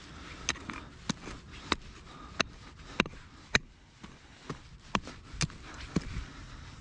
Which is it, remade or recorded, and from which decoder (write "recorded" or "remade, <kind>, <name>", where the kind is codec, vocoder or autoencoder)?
recorded